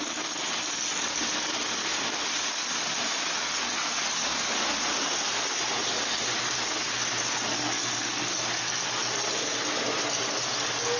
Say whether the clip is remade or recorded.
recorded